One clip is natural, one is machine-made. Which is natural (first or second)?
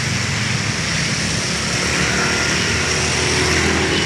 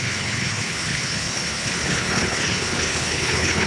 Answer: first